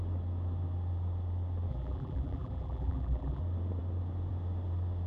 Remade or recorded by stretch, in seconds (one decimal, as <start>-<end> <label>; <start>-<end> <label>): 0.0-1.7 recorded; 1.7-3.4 remade; 3.4-5.1 recorded